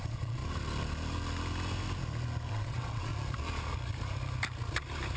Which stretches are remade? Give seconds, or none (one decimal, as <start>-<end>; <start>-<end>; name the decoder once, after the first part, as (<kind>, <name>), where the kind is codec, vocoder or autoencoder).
0.0-0.4 (vocoder, WaveNeXt); 2.5-3.1